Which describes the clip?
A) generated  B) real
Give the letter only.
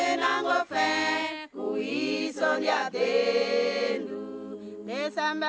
B